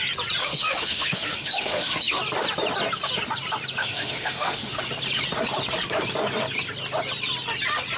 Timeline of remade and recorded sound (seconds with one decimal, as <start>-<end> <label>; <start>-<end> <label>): 0.0-0.4 recorded; 0.4-2.2 remade; 2.2-3.8 recorded; 3.8-4.8 remade; 4.8-8.0 recorded